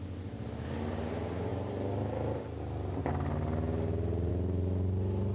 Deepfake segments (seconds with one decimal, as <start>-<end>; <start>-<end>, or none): 1.5-4.3

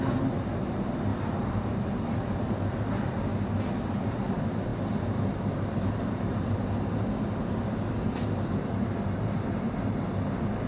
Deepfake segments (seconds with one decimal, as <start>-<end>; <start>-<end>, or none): 0.0-1.1; 2.2-3.3; 4.1-10.7

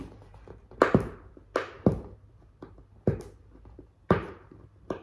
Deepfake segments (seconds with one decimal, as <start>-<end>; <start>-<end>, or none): 0.0-1.4; 3.6-5.0